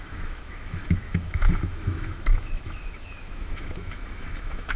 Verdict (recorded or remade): remade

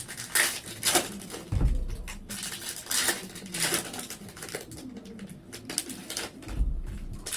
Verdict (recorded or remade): recorded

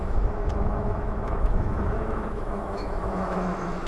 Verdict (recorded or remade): remade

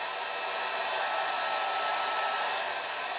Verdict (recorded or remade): recorded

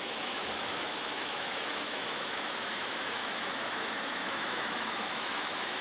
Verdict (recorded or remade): remade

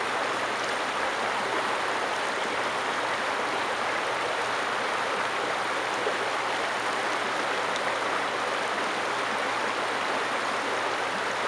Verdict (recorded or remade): recorded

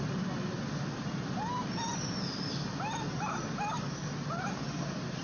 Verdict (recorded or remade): recorded